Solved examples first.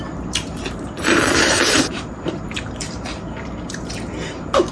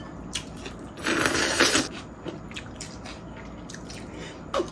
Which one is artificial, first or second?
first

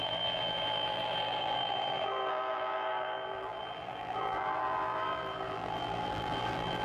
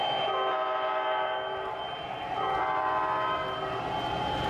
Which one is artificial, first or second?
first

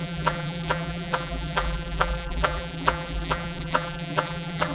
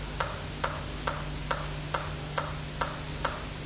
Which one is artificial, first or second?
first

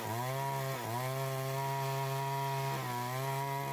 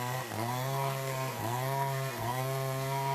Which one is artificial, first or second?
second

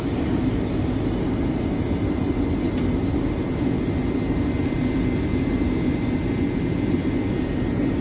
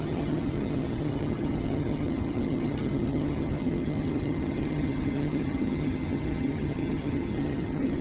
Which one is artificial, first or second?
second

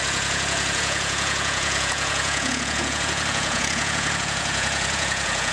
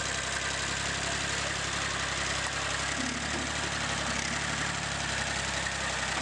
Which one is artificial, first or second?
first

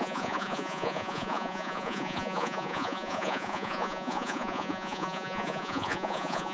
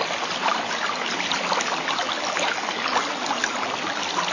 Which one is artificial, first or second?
first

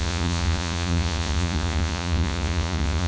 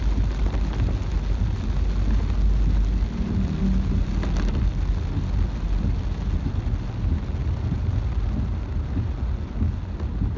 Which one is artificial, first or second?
first